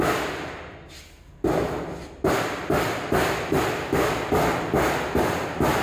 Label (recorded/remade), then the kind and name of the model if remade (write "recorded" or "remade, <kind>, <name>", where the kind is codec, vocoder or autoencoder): recorded